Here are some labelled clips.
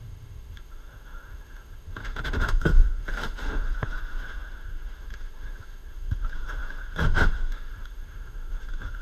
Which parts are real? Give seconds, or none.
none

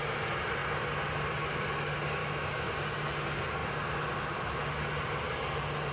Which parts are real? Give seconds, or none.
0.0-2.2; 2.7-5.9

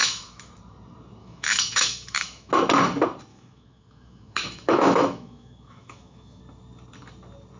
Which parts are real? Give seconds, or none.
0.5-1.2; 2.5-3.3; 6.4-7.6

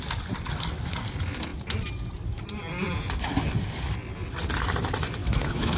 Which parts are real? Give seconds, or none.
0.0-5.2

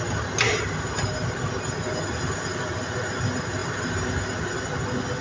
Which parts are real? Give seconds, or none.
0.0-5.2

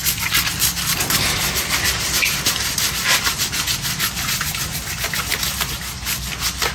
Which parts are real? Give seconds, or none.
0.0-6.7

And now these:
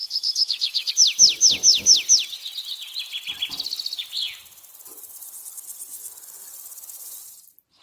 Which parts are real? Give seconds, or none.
0.9-7.8